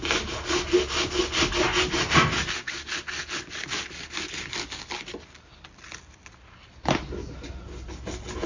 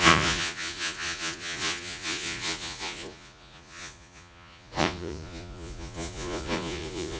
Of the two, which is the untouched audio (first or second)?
first